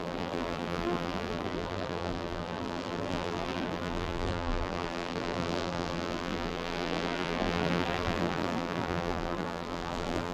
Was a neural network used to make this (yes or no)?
yes